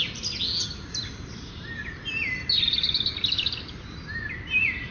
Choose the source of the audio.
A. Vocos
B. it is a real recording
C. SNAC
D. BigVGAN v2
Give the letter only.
B